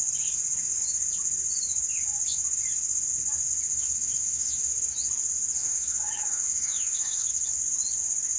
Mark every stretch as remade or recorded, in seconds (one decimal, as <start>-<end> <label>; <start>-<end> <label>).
0.0-3.7 recorded; 3.7-4.7 remade; 4.7-5.6 recorded; 5.6-7.3 remade; 7.3-8.4 recorded